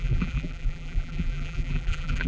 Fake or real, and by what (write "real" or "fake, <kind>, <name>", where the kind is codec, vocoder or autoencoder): fake, vocoder, BigVGAN v2